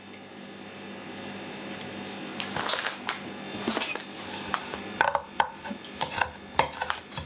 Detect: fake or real real